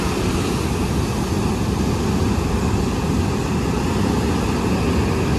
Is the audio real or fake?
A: real